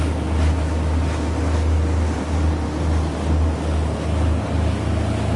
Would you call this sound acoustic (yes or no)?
yes